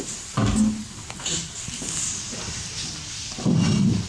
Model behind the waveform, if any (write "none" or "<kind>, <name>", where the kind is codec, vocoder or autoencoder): none